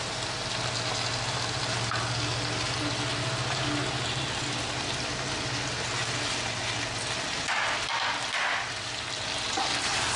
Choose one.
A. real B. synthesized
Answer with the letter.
A